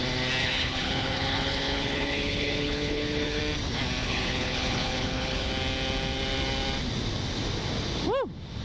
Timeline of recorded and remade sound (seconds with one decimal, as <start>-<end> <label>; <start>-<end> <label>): 0.0-0.4 recorded; 0.4-3.4 remade; 3.4-4.0 recorded; 4.0-5.5 remade; 5.5-8.6 recorded